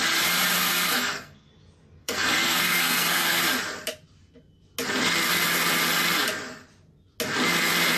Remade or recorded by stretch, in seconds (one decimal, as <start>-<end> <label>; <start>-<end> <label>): 0.0-0.6 recorded; 0.6-1.5 remade; 1.5-2.0 recorded; 2.0-3.4 remade; 3.4-8.0 recorded